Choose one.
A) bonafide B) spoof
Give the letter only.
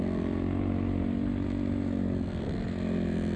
A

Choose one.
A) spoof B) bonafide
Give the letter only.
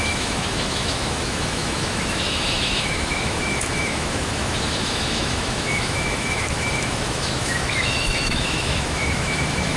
A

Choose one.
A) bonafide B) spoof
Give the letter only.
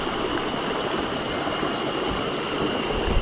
A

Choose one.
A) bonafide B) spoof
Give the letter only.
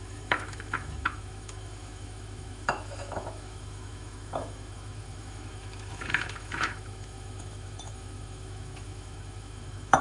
B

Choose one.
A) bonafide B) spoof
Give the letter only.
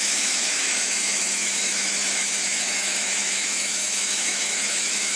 B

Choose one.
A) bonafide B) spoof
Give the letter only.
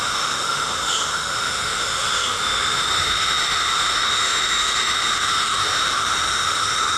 B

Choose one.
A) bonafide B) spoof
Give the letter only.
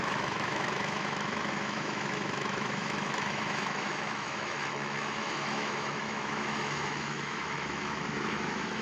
B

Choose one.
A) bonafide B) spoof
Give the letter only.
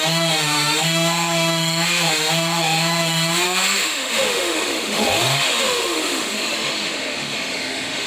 B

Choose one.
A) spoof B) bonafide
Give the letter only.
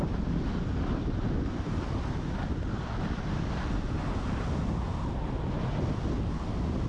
B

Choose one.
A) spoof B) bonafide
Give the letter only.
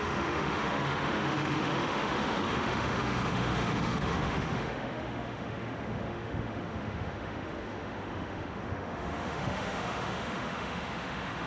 A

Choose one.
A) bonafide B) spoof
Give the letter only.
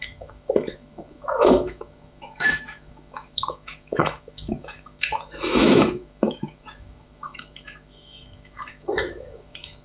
B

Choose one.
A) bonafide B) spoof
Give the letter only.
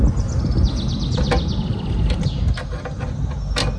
A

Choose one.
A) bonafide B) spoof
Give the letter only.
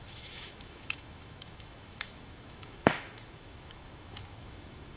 B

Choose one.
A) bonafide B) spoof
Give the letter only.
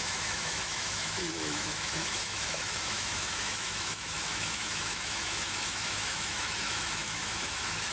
B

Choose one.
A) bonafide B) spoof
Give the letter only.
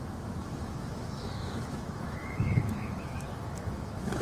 B